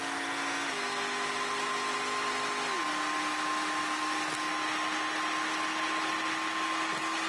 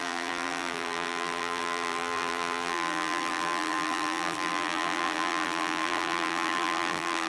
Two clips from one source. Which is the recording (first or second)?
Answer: first